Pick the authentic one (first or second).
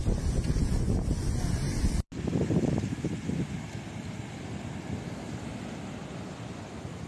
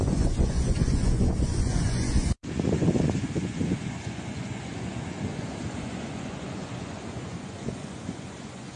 first